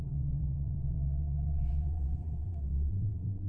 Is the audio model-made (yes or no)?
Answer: yes